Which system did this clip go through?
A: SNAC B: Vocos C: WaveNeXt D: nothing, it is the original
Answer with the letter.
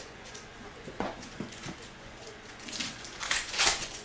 B